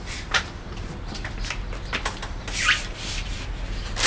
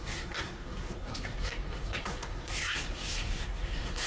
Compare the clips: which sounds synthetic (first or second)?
second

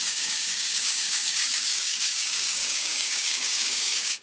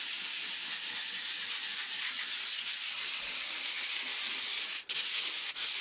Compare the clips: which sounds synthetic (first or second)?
first